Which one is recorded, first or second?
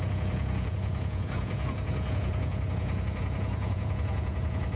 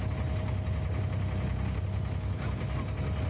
second